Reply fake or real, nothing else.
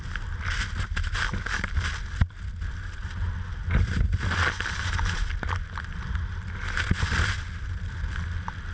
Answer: real